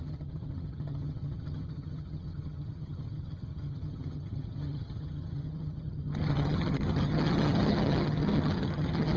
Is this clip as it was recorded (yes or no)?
no